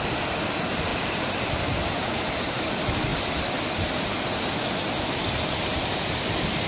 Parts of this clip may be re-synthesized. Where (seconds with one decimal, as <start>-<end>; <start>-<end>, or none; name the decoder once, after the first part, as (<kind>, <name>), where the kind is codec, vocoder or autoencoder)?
none